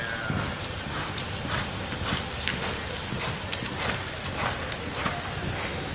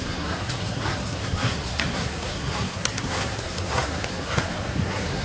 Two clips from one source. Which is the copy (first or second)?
second